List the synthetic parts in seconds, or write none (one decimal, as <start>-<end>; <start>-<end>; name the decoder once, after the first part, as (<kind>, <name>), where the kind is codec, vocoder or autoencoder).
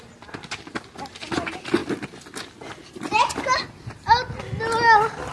none